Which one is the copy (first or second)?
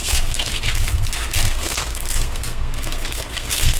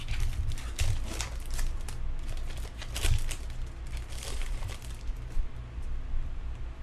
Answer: first